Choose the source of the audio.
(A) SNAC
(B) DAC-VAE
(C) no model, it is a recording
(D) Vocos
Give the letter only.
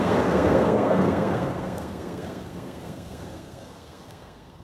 A